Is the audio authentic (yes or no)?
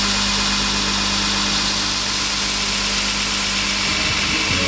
yes